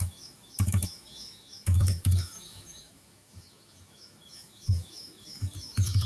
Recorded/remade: remade